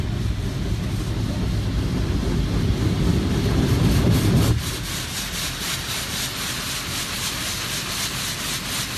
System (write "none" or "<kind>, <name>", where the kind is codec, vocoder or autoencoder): none